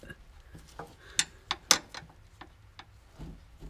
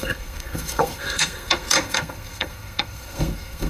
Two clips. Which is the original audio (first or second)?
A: first